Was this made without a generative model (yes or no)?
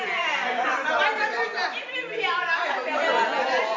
yes